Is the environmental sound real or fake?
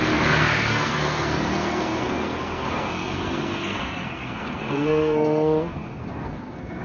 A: fake